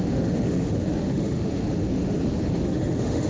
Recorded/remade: remade